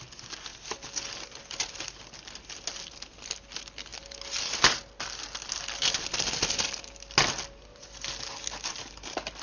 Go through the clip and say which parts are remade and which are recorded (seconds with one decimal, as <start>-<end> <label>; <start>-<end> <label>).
0.0-9.4 recorded